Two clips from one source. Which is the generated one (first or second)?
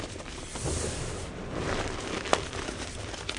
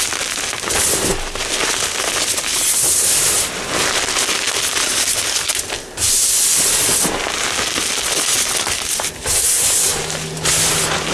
first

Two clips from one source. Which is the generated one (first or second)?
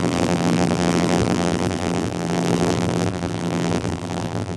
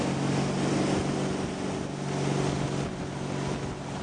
first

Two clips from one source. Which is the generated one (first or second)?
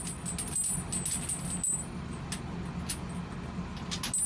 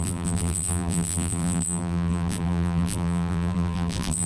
second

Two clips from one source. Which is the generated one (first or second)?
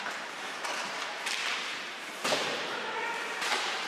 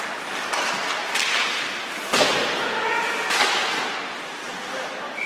first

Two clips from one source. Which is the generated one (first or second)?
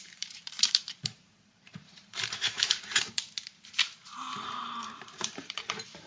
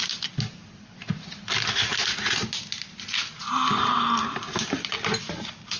first